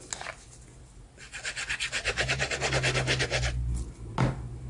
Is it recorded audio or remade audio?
recorded